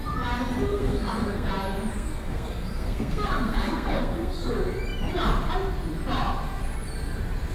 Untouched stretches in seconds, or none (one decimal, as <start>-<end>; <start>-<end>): 0.0-0.7; 1.5-1.9; 4.5-7.5